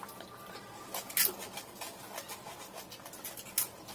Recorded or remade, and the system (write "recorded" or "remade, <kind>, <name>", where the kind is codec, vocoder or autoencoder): recorded